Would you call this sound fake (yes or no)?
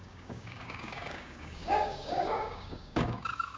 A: yes